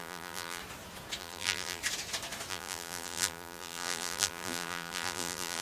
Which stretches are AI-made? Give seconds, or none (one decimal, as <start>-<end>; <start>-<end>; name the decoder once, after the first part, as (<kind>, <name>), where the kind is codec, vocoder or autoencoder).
0.0-0.6 (vocoder, BigVGAN v2); 1.2-1.8; 2.5-5.6